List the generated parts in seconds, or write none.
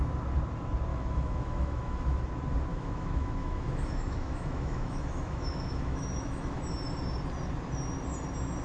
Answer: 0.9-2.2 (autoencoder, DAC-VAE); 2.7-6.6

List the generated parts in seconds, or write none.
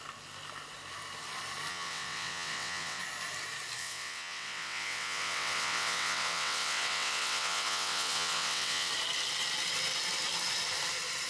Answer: 1.7-3.0 (vocoder, WaveNeXt); 3.8-8.9